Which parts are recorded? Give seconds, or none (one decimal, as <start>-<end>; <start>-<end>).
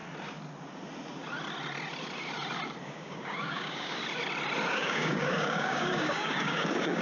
0.0-2.8; 4.0-4.7